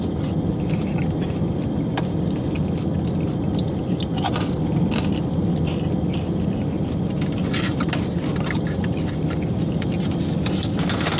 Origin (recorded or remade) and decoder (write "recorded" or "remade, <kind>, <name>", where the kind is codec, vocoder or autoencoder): recorded